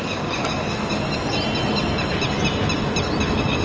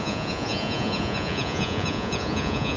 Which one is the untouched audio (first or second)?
first